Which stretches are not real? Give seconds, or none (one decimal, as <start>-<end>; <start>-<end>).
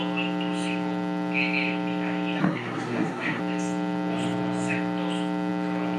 2.4-3.4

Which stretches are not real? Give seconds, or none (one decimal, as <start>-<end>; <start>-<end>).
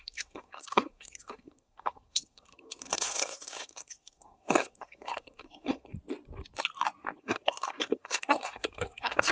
0.0-5.9; 7.2-9.3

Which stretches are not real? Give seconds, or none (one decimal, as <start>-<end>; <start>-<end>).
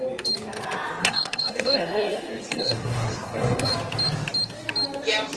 1.0-3.7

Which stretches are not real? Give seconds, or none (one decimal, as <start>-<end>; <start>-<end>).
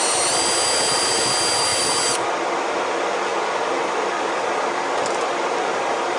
none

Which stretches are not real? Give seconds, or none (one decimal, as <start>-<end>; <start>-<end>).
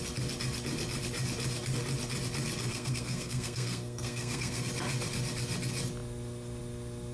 2.7-4.7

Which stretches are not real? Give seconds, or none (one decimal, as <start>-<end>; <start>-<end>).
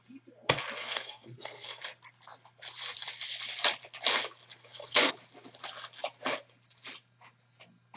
0.8-1.8; 4.6-5.1